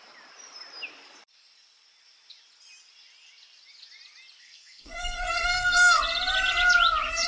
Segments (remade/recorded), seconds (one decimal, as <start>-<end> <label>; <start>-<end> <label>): 0.0-4.4 recorded; 4.4-6.0 remade; 6.0-7.3 recorded